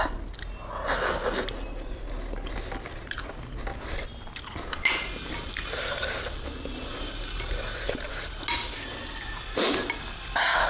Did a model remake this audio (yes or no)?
no